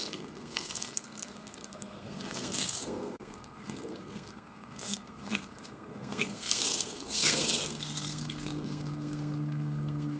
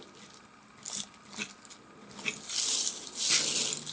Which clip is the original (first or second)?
second